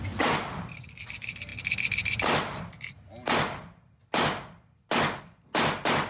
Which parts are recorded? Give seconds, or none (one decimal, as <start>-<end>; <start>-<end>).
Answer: 0.0-6.1